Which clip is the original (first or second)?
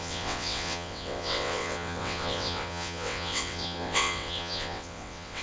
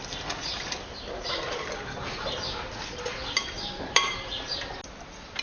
second